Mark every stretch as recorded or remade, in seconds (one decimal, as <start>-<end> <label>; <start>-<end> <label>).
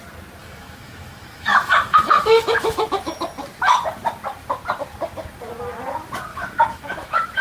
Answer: 0.0-0.4 recorded; 0.4-3.1 remade; 3.1-6.3 recorded; 6.3-7.4 remade